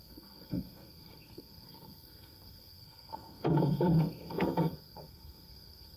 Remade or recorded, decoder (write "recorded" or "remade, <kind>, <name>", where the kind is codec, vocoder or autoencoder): remade, codec, SNAC